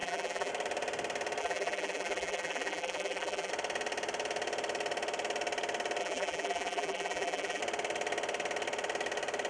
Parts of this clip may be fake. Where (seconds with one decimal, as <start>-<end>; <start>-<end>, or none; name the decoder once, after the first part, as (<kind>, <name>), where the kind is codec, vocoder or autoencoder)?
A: 0.0-0.5 (vocoder, BigVGAN v2); 1.4-3.5; 6.0-7.6